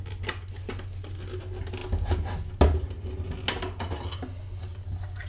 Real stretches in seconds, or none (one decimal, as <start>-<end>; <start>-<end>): 0.0-5.3

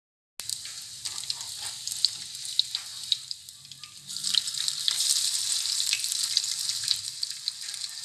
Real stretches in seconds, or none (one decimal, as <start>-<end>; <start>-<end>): 0.0-0.5; 1.5-2.9; 7.4-8.0

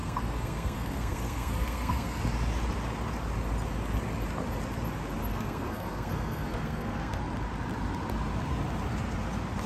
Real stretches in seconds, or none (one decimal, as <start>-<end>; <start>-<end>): 2.2-5.3; 7.2-9.7

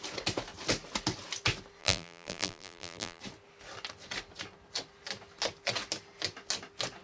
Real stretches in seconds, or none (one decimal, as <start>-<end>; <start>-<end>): 0.0-1.8; 3.2-7.0

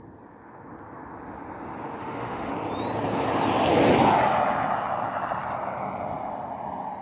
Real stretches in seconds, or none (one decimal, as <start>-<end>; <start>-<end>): 0.0-2.0; 2.5-7.0

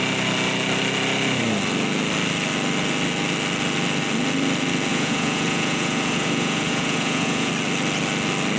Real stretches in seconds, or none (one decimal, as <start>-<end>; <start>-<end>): 0.0-4.9; 7.5-8.6